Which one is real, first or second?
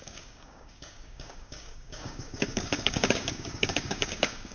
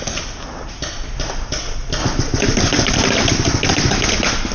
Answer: second